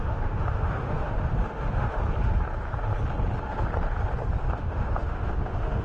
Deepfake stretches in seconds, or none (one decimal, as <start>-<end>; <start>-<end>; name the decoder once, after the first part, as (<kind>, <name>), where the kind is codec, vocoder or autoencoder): 0.0-2.0 (autoencoder, DAC-VAE); 4.6-5.8